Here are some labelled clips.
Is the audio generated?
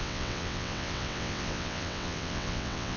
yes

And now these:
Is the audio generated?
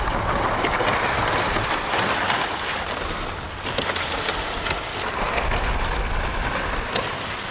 no